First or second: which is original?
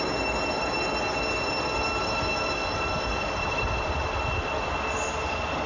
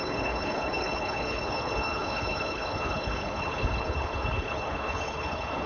first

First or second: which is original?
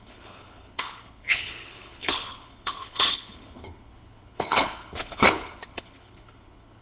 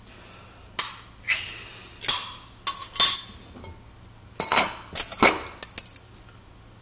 second